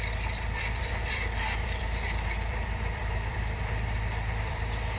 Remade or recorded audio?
remade